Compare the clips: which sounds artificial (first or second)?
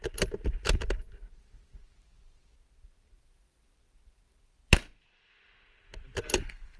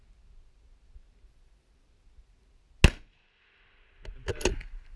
first